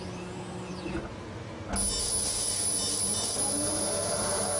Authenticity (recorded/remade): recorded